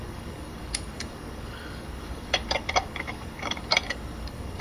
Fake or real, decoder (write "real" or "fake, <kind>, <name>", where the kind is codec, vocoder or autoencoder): fake, codec, DAC